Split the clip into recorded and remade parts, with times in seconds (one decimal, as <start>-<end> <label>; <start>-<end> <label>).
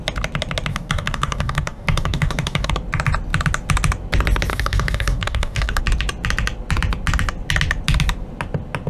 0.0-0.7 recorded; 0.7-2.7 remade; 2.7-4.5 recorded; 4.5-5.8 remade; 5.8-8.9 recorded